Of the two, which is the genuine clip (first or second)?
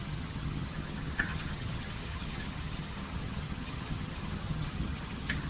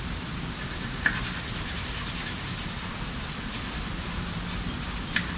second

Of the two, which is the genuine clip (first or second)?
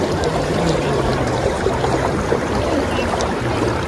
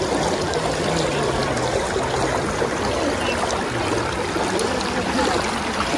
second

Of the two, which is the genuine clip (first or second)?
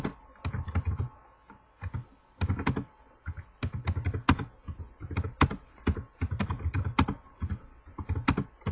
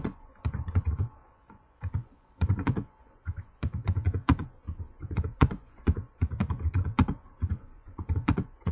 first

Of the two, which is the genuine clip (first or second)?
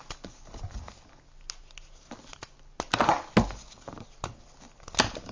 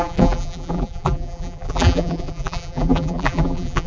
first